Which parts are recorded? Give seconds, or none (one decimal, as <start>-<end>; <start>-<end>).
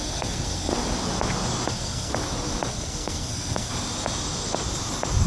0.7-1.7; 2.1-2.7; 3.7-5.3